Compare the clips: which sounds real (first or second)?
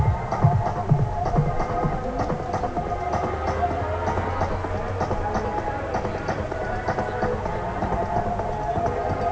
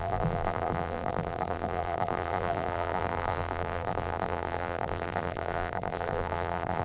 first